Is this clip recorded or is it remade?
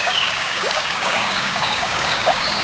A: remade